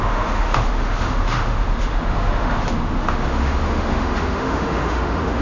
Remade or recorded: remade